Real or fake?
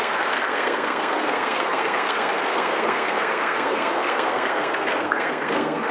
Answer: fake